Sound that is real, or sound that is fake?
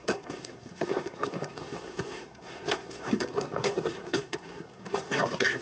fake